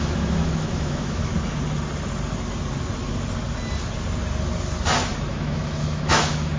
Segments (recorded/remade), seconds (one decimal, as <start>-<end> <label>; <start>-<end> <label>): 0.0-1.3 remade; 1.3-5.3 recorded; 5.3-6.6 remade